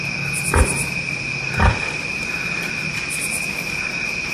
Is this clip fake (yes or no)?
no